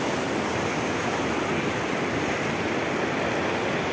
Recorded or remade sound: recorded